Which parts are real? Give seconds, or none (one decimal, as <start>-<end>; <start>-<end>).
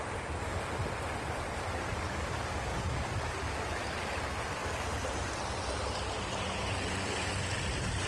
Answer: 0.0-0.5; 2.2-2.7; 3.3-4.6; 7.3-8.1